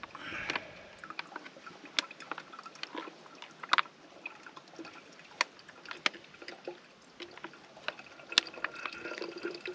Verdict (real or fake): real